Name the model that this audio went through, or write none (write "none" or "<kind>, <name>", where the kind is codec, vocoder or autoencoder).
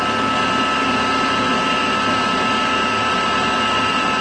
none